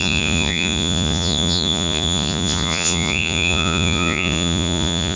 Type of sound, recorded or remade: remade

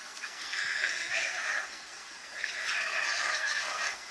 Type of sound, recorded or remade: remade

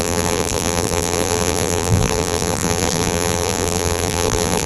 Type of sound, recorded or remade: remade